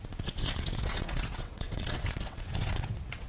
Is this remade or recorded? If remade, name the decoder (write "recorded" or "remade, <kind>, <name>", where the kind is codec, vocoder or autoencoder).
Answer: remade, vocoder, WaveNeXt